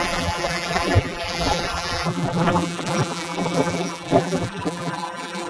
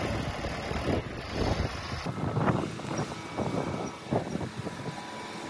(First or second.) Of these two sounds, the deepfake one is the first